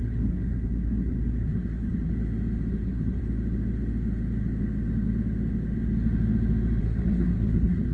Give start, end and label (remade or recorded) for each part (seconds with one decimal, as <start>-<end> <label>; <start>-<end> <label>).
0.0-2.1 remade; 2.1-2.7 recorded; 2.7-3.2 remade; 3.2-6.8 recorded; 6.8-7.9 remade